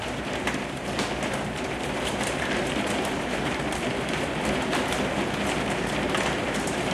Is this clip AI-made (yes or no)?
yes